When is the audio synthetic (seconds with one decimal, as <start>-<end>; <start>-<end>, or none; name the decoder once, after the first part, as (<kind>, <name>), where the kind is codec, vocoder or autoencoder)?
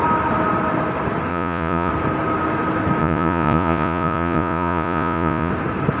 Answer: 1.3-1.9 (vocoder, Vocos); 3.0-5.5